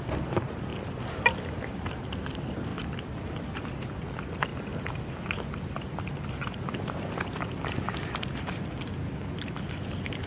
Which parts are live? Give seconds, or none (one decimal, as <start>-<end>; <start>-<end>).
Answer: 0.0-4.5; 5.1-10.3